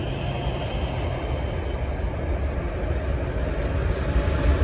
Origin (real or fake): real